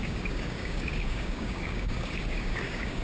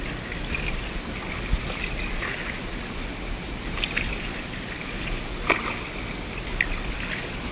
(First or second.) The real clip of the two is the second